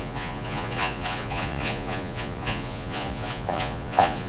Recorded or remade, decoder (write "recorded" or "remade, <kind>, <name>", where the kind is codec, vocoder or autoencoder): remade, vocoder, Vocos